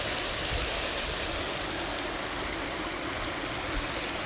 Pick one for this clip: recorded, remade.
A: recorded